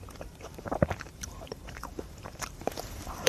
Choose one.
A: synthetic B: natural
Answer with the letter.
A